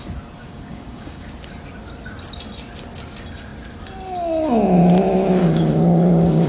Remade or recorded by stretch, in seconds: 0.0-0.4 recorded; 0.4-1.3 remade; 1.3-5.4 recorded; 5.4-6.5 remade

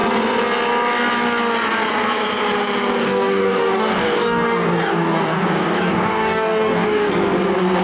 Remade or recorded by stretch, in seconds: 0.0-3.0 recorded; 3.0-7.1 remade; 7.1-7.8 recorded